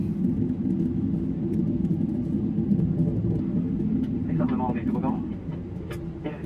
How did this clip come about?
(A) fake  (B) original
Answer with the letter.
B